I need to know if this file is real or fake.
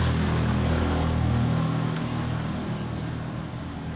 real